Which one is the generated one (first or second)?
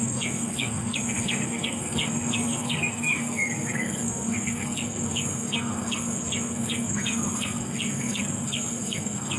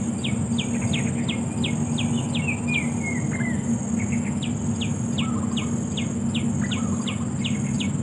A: first